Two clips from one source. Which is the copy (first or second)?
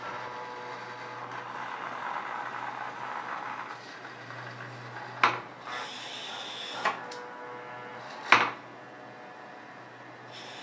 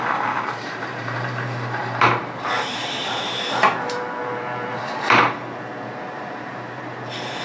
second